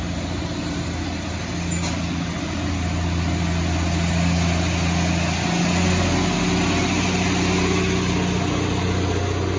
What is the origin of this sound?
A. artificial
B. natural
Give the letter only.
B